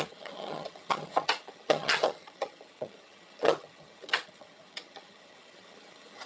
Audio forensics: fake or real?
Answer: fake